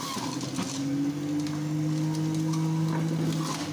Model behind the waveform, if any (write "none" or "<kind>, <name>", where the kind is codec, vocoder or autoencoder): none